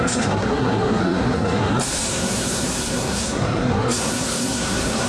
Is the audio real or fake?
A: fake